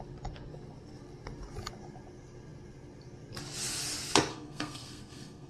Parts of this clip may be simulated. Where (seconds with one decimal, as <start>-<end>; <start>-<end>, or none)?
4.3-5.5